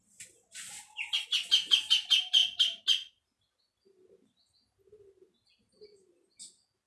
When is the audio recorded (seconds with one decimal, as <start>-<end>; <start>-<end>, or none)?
0.0-6.9